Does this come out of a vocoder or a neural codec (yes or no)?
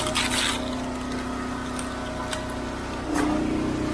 no